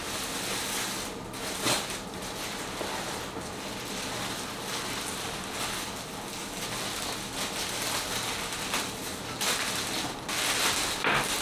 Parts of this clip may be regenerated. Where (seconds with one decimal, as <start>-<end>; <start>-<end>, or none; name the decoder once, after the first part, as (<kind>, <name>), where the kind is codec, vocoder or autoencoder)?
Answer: none

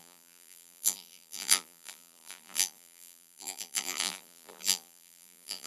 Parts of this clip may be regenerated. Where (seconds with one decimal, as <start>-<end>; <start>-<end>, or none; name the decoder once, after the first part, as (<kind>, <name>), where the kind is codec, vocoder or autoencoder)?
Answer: 0.0-5.7 (vocoder, BigVGAN v2)